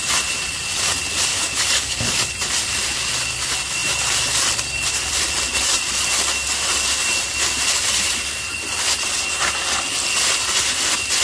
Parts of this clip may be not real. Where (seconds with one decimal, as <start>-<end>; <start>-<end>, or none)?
1.3-2.3